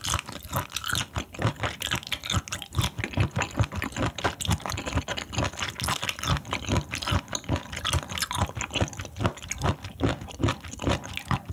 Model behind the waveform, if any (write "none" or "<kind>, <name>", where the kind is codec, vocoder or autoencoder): none